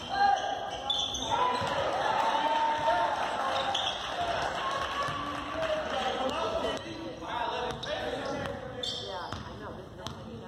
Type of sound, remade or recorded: recorded